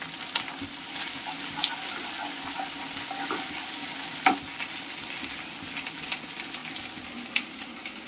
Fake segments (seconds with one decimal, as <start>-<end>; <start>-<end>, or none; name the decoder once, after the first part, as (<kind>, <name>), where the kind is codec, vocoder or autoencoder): none